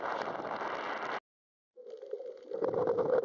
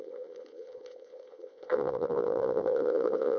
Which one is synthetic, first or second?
second